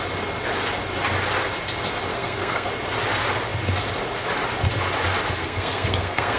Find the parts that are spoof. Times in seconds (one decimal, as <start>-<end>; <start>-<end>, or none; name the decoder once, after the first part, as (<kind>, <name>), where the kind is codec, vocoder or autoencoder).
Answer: 2.1-2.7 (codec, SNAC); 5.4-6.4